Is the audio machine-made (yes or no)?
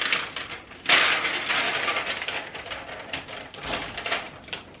no